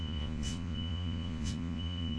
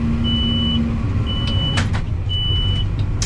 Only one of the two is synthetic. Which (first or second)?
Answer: first